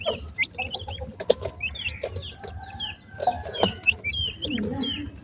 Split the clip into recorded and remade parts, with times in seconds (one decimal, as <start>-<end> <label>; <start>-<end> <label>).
0.0-3.2 recorded; 3.2-4.1 remade; 4.1-5.2 recorded